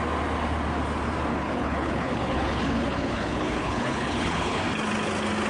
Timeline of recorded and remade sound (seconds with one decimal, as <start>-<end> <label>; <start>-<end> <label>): 0.0-1.3 recorded; 1.3-4.6 remade; 4.6-5.5 recorded